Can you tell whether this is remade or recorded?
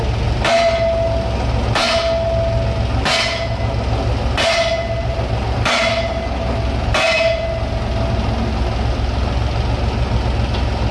recorded